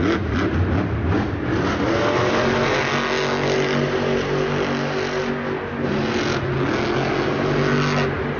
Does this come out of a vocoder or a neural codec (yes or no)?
no